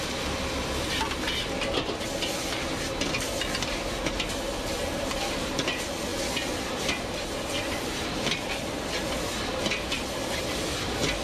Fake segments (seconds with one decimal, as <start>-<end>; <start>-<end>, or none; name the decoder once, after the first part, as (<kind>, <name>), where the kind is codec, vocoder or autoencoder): none

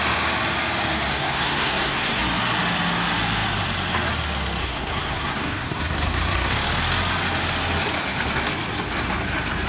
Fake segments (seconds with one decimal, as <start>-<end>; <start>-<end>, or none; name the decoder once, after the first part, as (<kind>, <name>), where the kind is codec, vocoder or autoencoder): 1.1-2.2 (codec, SNAC); 4.6-6.5

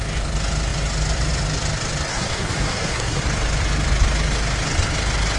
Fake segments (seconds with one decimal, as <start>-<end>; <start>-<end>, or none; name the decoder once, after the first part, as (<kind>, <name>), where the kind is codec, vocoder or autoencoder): 2.1-3.2 (codec, SNAC)

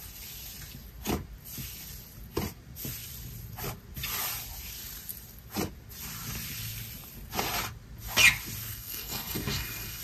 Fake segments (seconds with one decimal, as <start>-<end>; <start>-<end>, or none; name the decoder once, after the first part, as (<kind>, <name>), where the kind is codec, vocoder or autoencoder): 8.7-10.0 (codec, SNAC)